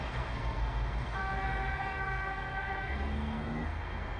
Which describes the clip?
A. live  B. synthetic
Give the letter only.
B